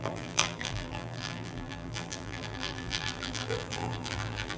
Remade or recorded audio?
remade